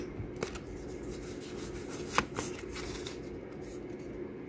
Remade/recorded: recorded